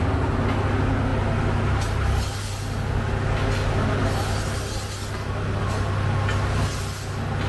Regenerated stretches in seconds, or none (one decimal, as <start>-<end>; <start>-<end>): none